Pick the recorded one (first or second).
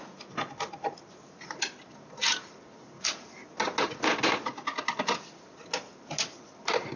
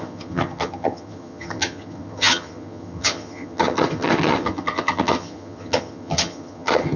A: first